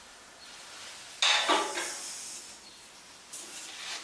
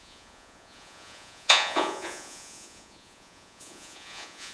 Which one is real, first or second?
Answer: first